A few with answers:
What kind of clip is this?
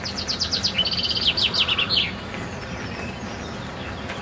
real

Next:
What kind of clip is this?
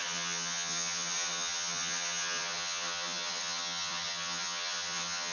fake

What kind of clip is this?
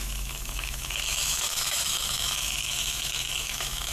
fake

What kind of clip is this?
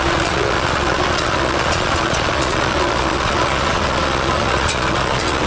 fake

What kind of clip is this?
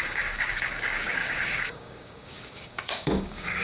fake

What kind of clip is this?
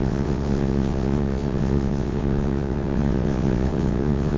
fake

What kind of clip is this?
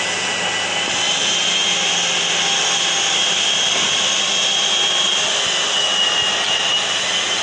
real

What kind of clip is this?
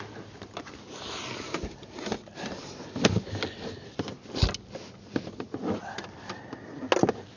real